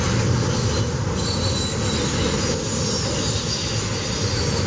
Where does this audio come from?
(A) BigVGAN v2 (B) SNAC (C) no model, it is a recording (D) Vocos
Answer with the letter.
C